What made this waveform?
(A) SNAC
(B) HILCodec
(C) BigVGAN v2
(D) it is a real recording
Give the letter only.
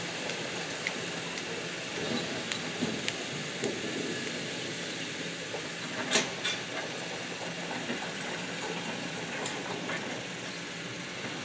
D